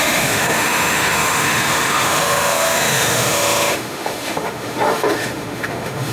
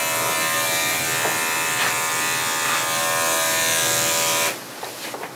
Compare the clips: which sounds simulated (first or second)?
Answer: first